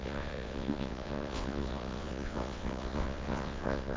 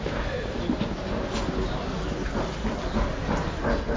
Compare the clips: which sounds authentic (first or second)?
second